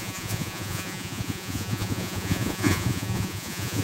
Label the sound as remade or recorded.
remade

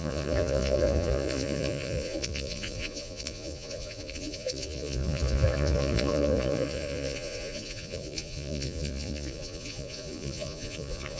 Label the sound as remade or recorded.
remade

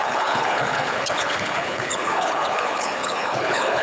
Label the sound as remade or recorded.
remade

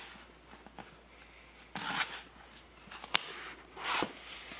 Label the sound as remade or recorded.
recorded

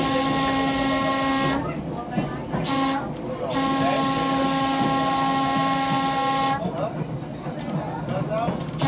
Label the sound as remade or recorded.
recorded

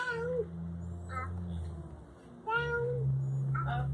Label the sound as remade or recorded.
recorded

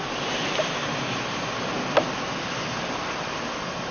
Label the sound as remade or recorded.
recorded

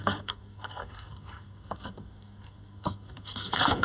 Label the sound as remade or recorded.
remade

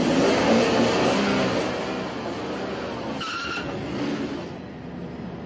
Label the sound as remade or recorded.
recorded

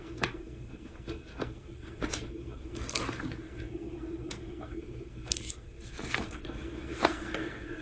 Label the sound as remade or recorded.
remade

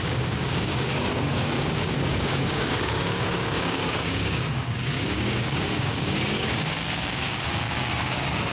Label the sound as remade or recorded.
remade